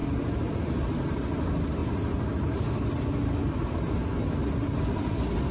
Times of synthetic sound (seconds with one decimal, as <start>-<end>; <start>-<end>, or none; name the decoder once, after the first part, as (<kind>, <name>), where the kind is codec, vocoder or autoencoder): none